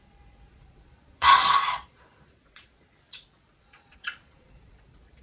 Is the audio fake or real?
fake